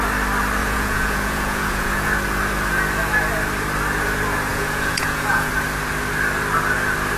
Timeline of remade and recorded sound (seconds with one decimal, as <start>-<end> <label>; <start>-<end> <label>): 0.0-0.6 recorded; 0.6-2.1 remade; 2.1-4.5 recorded; 4.5-5.5 remade; 5.5-7.2 recorded